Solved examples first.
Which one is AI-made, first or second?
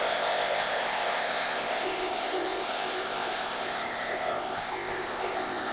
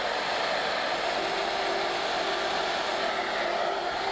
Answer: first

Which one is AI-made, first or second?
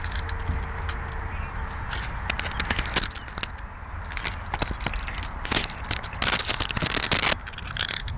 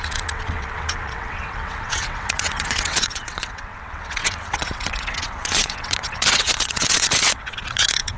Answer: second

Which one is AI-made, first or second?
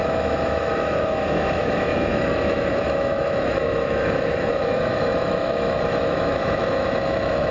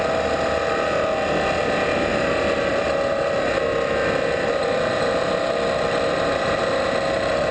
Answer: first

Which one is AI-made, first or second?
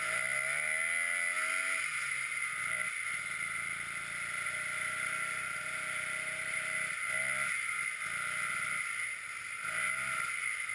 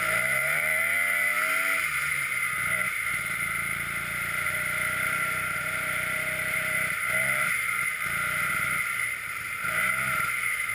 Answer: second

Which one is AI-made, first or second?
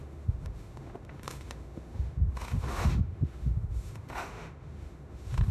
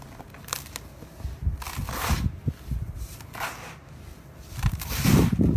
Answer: first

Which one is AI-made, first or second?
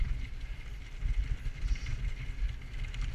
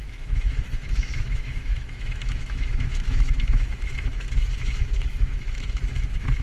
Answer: second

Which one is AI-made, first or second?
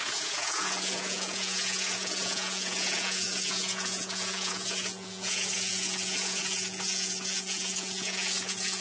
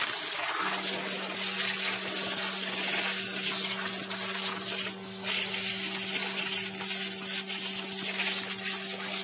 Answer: first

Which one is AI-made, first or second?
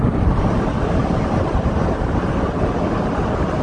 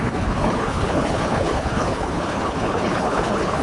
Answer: second